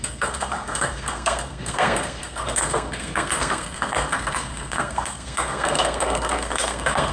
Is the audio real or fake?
fake